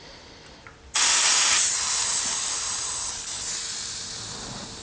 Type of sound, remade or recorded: recorded